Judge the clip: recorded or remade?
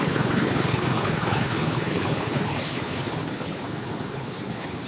remade